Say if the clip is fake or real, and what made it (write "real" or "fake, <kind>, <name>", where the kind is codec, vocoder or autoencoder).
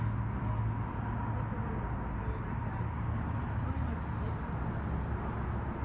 real